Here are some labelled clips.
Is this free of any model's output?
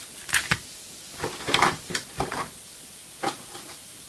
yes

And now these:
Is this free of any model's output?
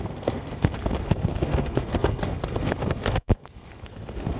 no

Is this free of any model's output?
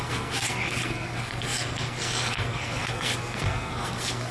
no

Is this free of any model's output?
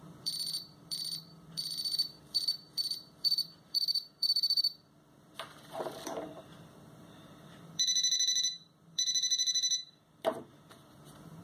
no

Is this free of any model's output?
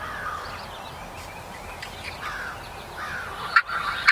yes